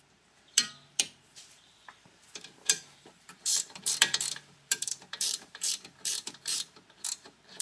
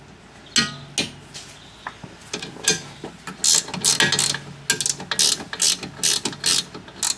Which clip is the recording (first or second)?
second